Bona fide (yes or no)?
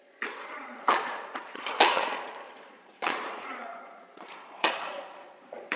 no